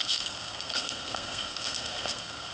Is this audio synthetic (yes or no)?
yes